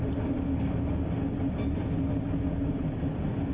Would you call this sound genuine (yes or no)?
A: yes